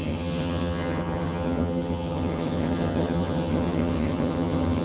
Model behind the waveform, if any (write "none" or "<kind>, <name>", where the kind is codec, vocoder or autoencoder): vocoder, HiFi-GAN